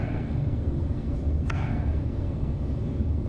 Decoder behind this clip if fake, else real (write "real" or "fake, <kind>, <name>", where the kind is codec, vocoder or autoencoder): fake, codec, SNAC